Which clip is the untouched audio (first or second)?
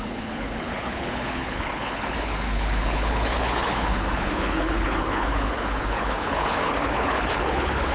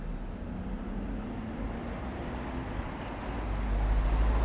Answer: second